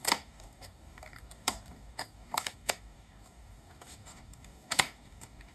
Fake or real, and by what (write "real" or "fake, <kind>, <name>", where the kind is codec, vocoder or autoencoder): fake, codec, DAC